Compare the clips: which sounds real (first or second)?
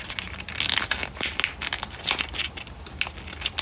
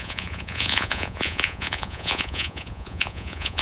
first